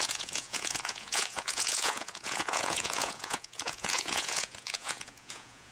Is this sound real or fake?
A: fake